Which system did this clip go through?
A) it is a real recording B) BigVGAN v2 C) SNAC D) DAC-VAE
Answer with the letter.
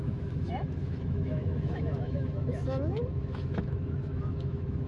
D